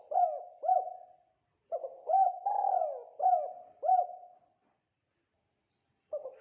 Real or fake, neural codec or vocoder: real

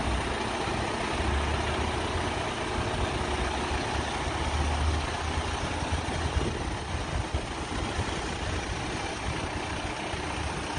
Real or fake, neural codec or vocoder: real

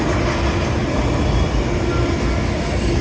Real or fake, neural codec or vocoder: real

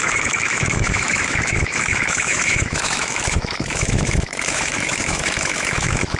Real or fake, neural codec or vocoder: fake, autoencoder, DAC-VAE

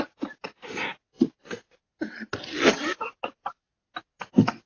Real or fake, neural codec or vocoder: real